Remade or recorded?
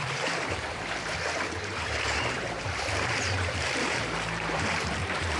remade